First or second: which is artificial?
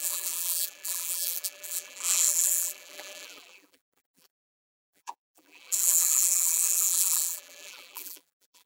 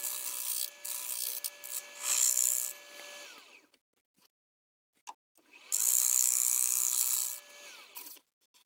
first